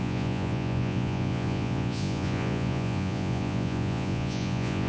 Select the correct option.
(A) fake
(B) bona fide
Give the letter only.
A